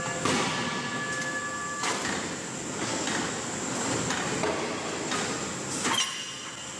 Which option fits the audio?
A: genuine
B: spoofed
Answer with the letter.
A